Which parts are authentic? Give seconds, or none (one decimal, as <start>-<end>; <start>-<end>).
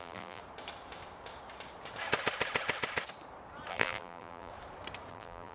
0.4-3.7; 4.5-5.1